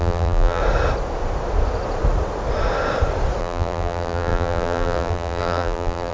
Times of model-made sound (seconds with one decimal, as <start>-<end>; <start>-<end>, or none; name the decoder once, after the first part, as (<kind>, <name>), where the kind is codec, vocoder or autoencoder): 0.0-0.6 (vocoder, BigVGAN v2); 3.4-6.1